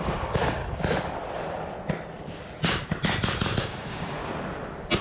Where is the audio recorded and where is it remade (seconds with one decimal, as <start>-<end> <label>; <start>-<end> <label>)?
0.0-0.6 remade; 0.6-3.6 recorded; 3.6-4.2 remade; 4.2-5.0 recorded